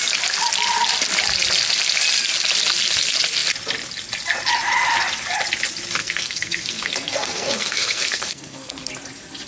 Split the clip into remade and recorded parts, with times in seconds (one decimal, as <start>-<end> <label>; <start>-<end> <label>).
0.0-6.0 recorded; 6.0-8.9 remade; 8.9-9.5 recorded